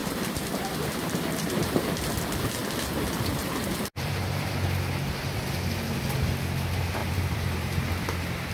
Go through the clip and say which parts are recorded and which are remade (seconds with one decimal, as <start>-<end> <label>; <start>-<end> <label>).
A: 0.0-2.1 remade; 2.1-2.6 recorded; 2.6-4.5 remade; 4.5-7.0 recorded; 7.0-7.8 remade; 7.8-8.5 recorded